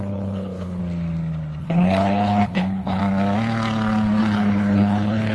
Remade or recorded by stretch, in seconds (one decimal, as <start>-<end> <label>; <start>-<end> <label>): 0.0-0.8 remade; 0.8-1.6 recorded; 1.6-3.0 remade; 3.0-4.2 recorded; 4.2-5.3 remade